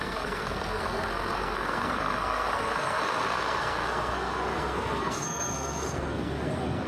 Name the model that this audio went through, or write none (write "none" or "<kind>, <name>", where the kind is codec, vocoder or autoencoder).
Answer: codec, SNAC